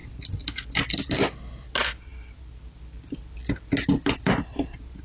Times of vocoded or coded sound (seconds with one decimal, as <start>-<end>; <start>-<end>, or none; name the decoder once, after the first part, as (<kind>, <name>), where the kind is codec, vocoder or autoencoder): none

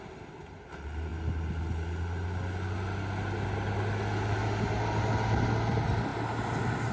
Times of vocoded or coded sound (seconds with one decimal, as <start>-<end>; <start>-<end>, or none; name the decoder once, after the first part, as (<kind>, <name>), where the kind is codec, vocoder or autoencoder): none

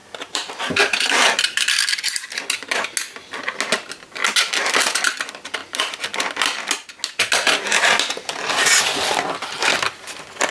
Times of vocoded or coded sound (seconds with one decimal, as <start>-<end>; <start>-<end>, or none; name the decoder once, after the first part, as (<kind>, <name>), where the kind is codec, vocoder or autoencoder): 0.0-0.6 (vocoder, BigVGAN v2); 4.2-5.0